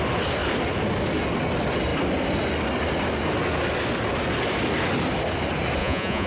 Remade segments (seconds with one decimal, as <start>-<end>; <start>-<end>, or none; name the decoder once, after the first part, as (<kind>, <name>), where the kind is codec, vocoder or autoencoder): 5.8-6.3 (vocoder, Vocos)